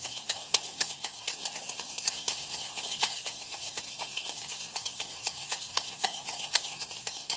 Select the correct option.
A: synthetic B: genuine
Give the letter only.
A